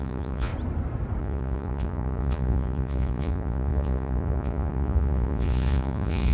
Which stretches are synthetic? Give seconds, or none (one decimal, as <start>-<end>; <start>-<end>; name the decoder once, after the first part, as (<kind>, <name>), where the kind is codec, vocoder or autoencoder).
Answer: 0.0-0.5 (vocoder, Vocos); 1.2-6.3